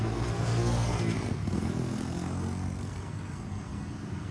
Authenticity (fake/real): fake